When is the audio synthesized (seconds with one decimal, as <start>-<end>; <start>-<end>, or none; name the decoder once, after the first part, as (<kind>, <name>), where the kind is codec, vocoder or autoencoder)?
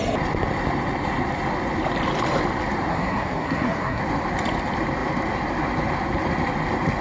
2.9-4.0 (codec, SNAC)